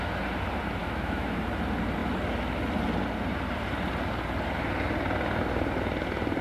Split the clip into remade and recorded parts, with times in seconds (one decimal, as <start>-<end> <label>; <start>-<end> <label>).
0.0-0.8 recorded; 0.8-1.4 remade; 1.4-6.4 recorded

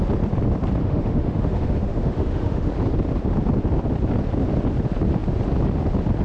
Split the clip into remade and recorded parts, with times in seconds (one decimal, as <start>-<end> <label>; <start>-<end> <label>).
0.0-0.8 recorded; 0.8-2.7 remade; 2.7-6.2 recorded

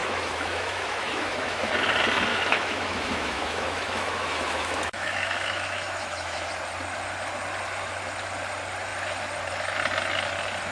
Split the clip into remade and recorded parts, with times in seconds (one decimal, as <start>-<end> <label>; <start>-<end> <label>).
0.0-1.7 remade; 1.7-2.3 recorded; 2.3-6.5 remade; 6.5-10.7 recorded

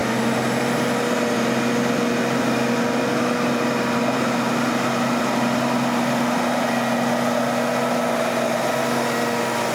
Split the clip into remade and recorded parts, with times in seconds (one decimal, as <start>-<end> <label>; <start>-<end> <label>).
0.0-9.7 recorded

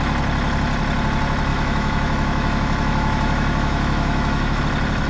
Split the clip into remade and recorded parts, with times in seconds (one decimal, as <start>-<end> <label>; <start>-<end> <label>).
0.0-1.5 recorded; 1.5-4.6 remade; 4.6-5.1 recorded